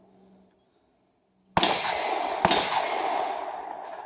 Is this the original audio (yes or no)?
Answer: yes